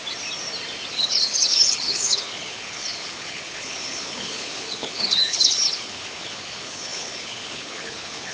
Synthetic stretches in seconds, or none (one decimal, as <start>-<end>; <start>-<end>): 0.9-8.3